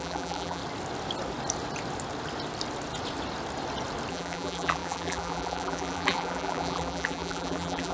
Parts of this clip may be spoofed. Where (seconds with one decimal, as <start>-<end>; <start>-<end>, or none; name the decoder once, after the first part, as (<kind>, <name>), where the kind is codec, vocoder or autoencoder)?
0.0-0.6 (vocoder, BigVGAN v2); 4.1-7.9